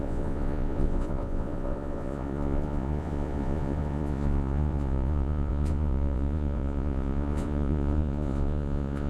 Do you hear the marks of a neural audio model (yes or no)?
yes